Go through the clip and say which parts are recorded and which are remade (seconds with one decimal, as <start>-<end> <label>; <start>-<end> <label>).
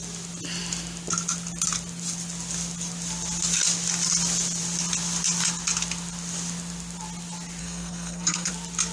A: 0.0-7.6 recorded; 7.6-8.5 remade; 8.5-8.9 recorded